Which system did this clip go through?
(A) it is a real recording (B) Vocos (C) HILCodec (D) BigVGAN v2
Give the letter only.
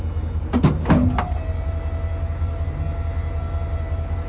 A